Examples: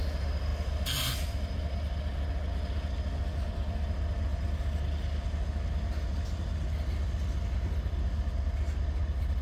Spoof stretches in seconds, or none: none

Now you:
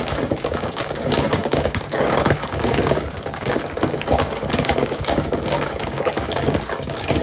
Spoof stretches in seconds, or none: 0.0-7.2 (codec, DAC)

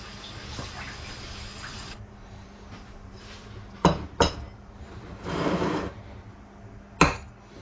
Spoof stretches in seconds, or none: 1.7-6.3 (vocoder, BigVGAN v2)

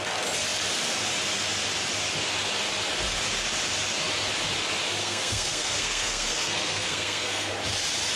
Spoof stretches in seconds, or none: 5.0-7.5 (codec, SNAC)

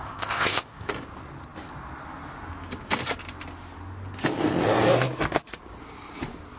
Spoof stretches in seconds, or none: 0.0-0.9 (codec, ZipCodec)

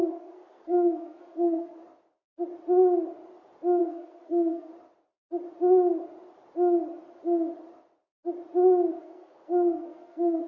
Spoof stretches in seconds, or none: 0.0-1.8 (codec, SNAC); 3.8-4.7; 8.9-10.5